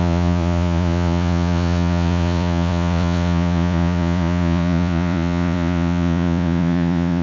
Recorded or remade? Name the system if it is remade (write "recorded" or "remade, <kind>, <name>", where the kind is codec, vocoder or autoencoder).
remade, vocoder, Vocos